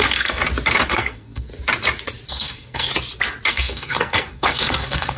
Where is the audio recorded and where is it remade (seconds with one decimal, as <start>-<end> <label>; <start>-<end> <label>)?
0.0-0.4 remade; 0.4-0.9 recorded; 0.9-1.5 remade; 1.5-2.3 recorded; 2.3-2.9 remade; 2.9-3.5 recorded; 3.5-5.2 remade